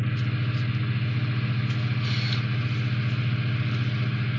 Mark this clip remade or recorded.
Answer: recorded